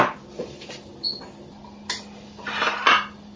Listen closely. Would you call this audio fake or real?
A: real